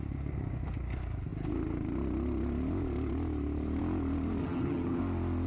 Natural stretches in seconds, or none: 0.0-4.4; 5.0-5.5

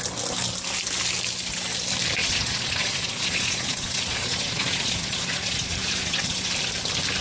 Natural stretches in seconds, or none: 0.0-2.2; 6.5-7.2

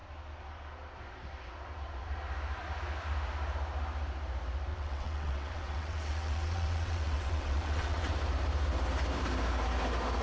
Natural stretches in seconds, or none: 0.0-4.7; 8.1-10.2

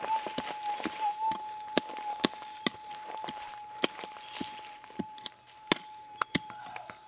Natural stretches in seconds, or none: 0.0-2.1; 2.6-7.1

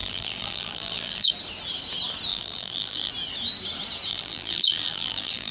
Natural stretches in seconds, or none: 1.3-2.3; 3.1-4.1

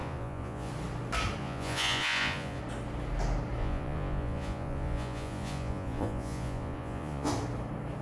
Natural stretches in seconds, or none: 0.7-1.4; 2.6-3.6; 7.3-8.0